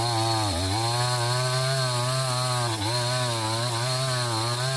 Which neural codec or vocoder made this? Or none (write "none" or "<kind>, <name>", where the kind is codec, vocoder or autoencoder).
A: none